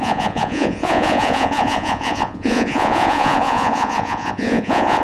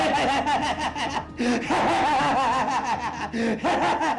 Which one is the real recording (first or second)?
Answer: second